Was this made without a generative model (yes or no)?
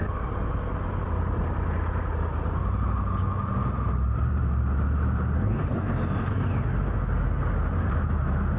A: yes